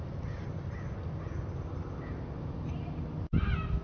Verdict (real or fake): real